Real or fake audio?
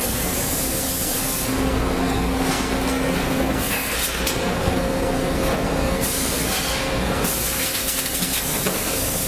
fake